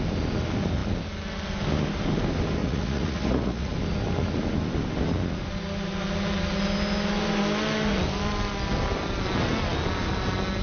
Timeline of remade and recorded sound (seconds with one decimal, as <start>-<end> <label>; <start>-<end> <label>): 0.0-2.6 recorded; 2.6-3.7 remade; 3.7-10.6 recorded